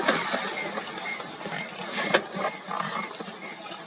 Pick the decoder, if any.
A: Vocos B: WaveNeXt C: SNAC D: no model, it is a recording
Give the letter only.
D